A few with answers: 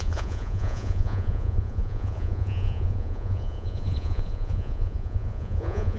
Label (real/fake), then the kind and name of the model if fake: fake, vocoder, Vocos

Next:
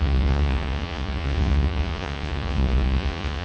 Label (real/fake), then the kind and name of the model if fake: fake, vocoder, Vocos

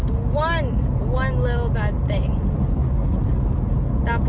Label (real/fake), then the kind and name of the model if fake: real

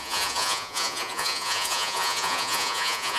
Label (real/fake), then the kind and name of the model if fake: fake, vocoder, Vocos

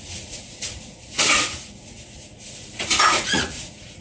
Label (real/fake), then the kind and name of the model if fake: fake, vocoder, Vocos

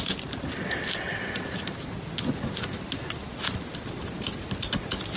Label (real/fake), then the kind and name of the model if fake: real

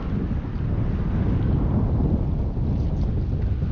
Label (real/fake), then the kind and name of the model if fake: real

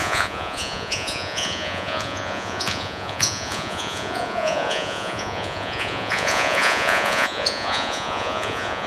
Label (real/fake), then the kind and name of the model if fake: fake, vocoder, Vocos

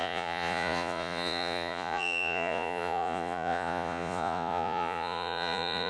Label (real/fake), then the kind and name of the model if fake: fake, vocoder, Vocos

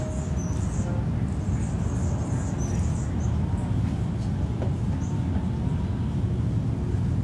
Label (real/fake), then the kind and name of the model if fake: real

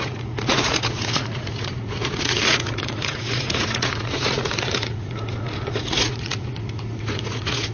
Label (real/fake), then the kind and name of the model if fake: fake, vocoder, Vocos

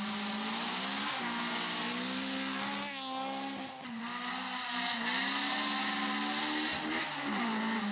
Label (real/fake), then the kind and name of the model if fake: real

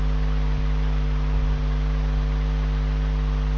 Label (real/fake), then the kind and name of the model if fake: real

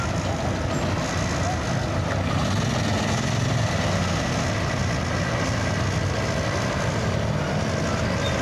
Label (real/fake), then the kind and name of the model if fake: real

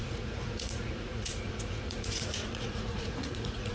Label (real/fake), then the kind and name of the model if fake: fake, vocoder, Vocos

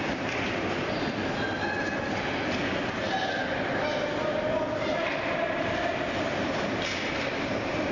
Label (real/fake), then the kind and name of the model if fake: real